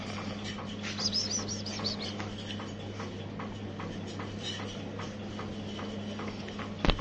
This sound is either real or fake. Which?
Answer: real